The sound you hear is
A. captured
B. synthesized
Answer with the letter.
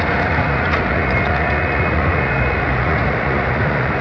B